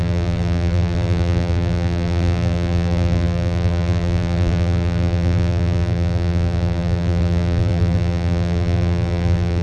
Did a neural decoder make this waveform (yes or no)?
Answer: yes